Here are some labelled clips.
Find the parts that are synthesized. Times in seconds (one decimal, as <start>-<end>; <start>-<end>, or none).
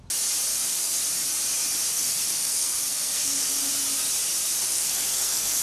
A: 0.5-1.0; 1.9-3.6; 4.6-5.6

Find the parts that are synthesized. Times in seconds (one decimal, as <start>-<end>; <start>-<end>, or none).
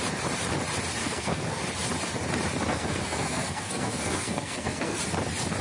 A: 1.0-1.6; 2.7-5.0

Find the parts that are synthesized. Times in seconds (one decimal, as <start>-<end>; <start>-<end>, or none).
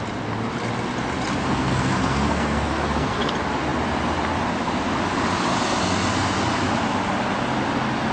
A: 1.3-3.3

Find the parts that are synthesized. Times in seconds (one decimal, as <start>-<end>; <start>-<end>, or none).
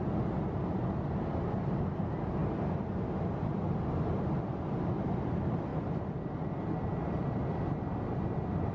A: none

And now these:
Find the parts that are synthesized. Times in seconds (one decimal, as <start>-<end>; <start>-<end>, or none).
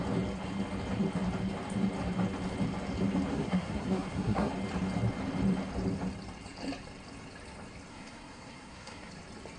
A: 3.3-4.5; 7.9-9.1